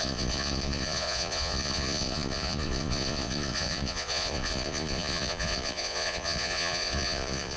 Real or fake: fake